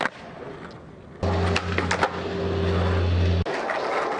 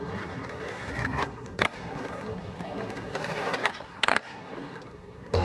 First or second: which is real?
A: first